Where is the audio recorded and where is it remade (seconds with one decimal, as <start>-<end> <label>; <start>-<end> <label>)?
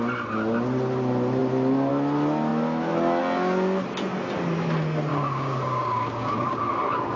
0.0-5.1 recorded; 5.1-6.6 remade; 6.6-7.2 recorded